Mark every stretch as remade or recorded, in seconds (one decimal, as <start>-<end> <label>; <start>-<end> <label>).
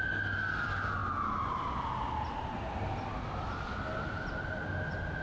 0.0-5.2 recorded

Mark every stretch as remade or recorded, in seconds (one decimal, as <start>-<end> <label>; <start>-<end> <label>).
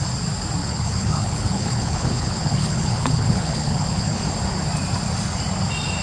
0.0-0.6 recorded; 0.6-4.2 remade; 4.2-6.0 recorded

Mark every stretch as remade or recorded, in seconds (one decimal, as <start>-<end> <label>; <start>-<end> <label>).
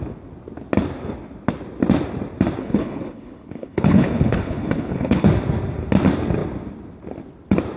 0.0-2.6 recorded; 2.6-5.3 remade; 5.3-7.8 recorded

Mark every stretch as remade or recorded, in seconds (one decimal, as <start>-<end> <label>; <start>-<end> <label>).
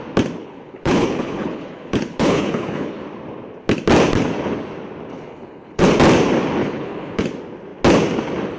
0.0-0.4 recorded; 0.4-3.0 remade; 3.0-5.1 recorded; 5.1-5.8 remade; 5.8-6.6 recorded; 6.6-7.2 remade; 7.2-8.6 recorded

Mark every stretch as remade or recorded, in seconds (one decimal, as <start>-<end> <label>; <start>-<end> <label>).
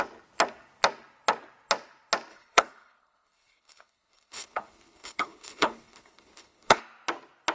0.0-2.3 recorded; 2.3-6.8 remade; 6.8-7.5 recorded